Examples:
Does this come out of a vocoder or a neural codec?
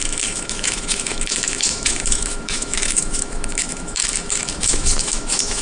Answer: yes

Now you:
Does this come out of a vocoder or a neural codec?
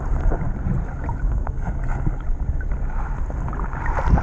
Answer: no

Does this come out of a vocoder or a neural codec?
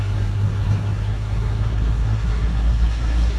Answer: yes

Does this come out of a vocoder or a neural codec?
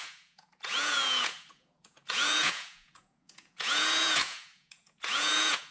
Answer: yes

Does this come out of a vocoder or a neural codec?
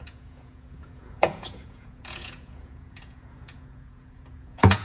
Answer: yes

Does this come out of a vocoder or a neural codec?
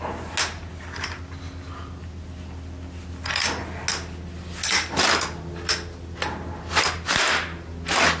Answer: no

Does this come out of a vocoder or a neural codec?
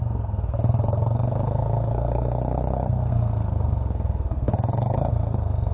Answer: yes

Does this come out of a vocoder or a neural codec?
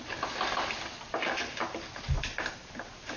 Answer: no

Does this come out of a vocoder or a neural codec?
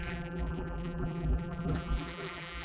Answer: yes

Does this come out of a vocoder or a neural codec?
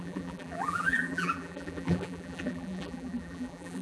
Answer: yes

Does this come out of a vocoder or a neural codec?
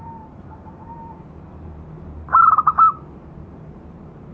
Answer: yes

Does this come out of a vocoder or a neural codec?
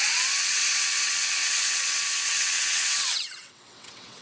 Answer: yes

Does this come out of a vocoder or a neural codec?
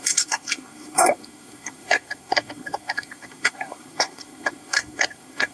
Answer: yes